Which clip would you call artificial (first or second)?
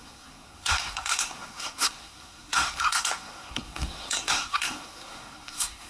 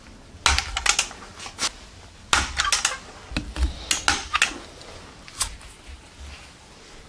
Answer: first